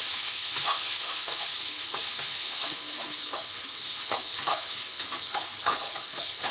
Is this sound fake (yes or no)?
yes